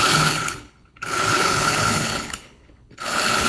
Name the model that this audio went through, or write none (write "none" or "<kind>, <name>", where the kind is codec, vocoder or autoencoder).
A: codec, HILCodec